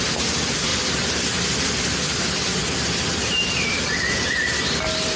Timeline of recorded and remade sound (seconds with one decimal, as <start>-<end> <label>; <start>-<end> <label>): 0.0-5.2 recorded